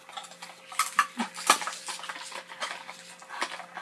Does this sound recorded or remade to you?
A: recorded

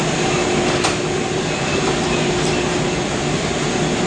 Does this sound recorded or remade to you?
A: recorded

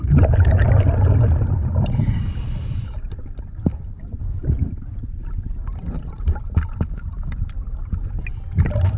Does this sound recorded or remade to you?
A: recorded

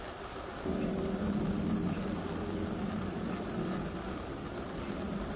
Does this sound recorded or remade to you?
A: recorded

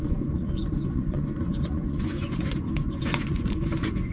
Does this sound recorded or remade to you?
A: remade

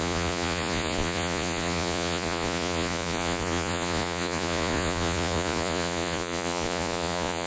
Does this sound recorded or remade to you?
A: remade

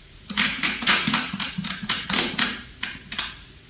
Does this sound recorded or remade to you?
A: remade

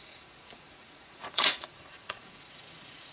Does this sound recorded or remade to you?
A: remade